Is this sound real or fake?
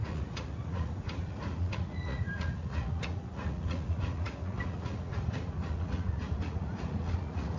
fake